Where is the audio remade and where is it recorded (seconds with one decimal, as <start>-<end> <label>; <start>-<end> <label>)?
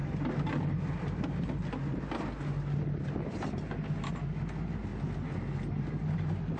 0.0-6.6 recorded